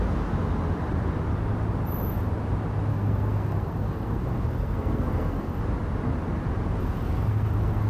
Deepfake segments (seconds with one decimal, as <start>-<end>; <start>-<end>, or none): 2.9-5.6; 6.8-7.9